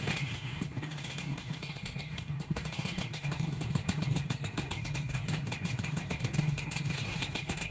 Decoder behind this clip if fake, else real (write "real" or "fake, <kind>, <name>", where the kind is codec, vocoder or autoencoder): fake, codec, SNAC